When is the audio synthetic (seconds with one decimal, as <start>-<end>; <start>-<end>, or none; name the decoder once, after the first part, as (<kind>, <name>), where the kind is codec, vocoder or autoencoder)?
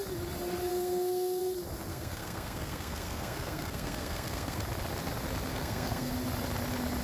0.7-1.4 (codec, SNAC); 1.9-4.6; 5.5-6.1